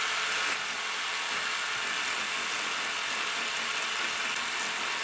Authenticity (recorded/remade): recorded